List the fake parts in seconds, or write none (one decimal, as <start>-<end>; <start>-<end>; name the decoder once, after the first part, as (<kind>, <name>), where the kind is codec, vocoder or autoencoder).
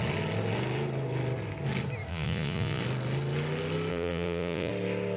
2.1-2.8 (vocoder, Vocos); 3.9-4.7